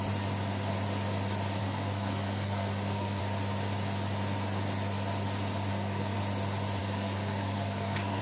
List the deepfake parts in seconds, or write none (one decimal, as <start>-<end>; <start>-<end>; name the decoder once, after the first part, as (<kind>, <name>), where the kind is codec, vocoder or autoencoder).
1.6-3.2 (codec, SNAC); 5.7-6.2; 6.8-8.2